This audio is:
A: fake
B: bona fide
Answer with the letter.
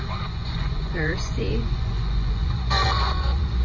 A